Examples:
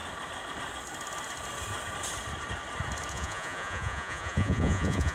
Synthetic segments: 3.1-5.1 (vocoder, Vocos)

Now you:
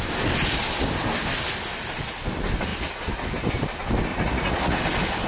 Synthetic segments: 4.1-4.8 (vocoder, Vocos)

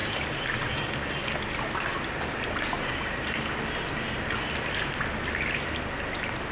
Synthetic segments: none

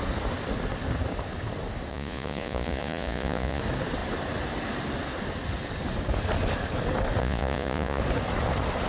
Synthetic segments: 1.9-3.6 (vocoder, Vocos); 7.2-8.0

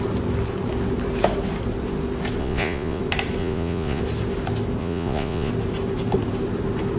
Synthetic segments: 2.4-3.0 (vocoder, Vocos); 3.4-4.0; 4.8-5.5

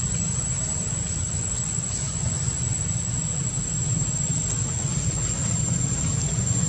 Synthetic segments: 0.0-0.4 (vocoder, Vocos); 1.4-3.5; 4.7-5.4; 6.3-6.7

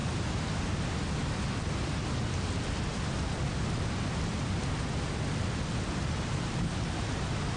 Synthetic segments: none